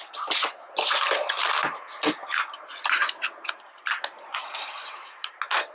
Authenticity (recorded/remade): recorded